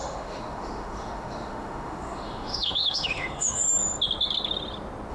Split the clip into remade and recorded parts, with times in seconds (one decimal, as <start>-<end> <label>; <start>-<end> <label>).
0.0-3.6 remade; 3.6-5.1 recorded